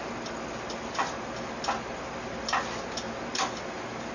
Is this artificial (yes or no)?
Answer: no